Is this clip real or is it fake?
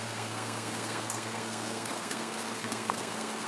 fake